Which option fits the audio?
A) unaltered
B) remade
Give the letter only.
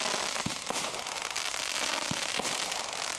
A